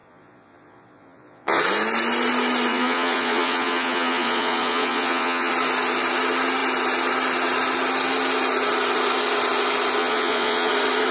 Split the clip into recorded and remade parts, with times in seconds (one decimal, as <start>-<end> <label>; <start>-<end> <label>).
0.0-1.6 remade; 1.6-2.7 recorded; 2.7-5.5 remade; 5.5-10.0 recorded; 10.0-10.7 remade; 10.7-11.1 recorded